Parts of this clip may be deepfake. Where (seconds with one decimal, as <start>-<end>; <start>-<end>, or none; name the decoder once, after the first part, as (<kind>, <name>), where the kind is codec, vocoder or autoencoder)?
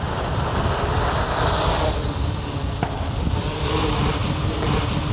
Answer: 0.0-0.5 (vocoder, BigVGAN v2); 3.6-5.1